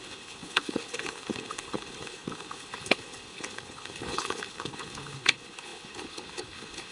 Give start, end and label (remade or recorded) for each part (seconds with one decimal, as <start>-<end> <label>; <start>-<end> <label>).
0.0-6.9 remade